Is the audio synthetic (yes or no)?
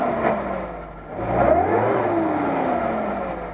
no